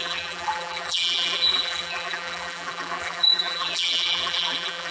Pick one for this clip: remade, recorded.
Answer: remade